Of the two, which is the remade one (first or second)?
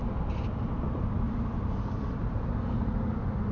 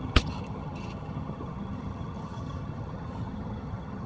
second